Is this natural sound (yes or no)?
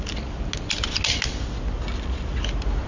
yes